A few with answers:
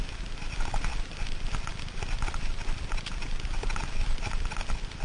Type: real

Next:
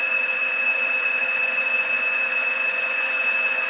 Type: fake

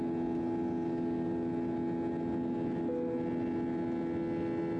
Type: real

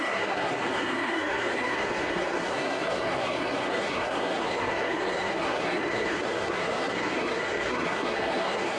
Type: fake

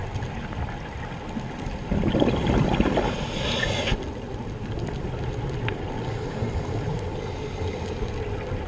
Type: real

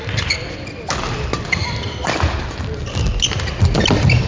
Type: real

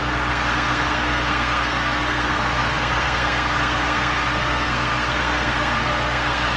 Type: fake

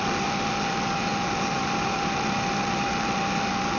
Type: real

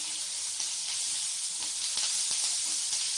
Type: real